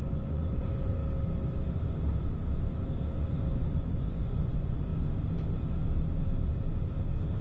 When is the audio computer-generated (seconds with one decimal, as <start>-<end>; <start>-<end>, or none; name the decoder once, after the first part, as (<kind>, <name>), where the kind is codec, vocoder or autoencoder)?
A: 0.0-1.0 (vocoder, Vocos); 3.2-4.9